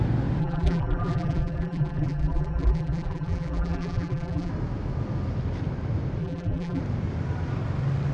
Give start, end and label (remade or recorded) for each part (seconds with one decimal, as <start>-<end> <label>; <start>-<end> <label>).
0.0-0.4 recorded; 0.4-4.5 remade; 4.5-6.2 recorded; 6.2-6.8 remade; 6.8-8.1 recorded